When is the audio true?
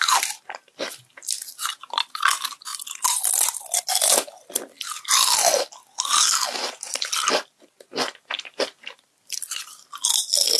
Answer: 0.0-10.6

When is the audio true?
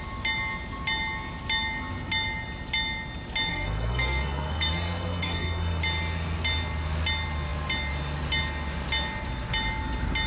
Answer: 0.0-3.5; 5.8-10.3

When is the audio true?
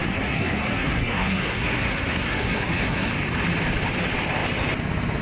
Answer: 3.1-5.2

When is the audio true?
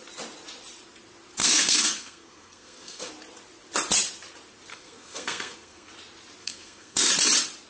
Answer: 0.0-1.4; 3.1-4.7; 5.9-6.4; 7.1-7.7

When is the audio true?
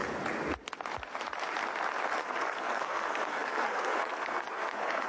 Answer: 0.0-2.2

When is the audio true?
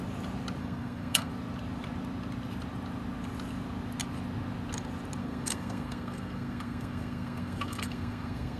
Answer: 0.0-0.6; 1.3-5.2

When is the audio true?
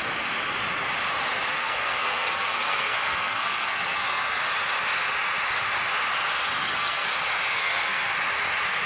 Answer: 0.0-1.5; 4.4-6.6; 7.1-7.5; 8.1-8.9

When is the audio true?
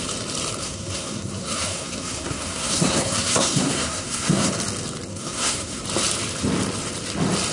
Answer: 0.0-0.6; 4.5-5.1; 5.8-7.5